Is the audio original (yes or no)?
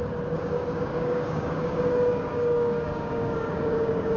no